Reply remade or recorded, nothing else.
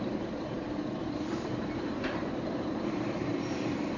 remade